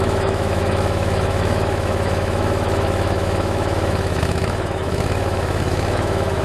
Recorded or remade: remade